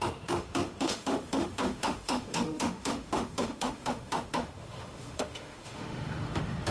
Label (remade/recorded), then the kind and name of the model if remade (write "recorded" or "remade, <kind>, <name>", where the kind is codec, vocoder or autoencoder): remade, autoencoder, DAC-VAE